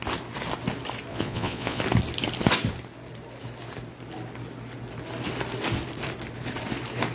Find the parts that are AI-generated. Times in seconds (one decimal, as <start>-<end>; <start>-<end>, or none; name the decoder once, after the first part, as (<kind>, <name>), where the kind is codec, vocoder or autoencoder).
1.1-1.8 (vocoder, Vocos)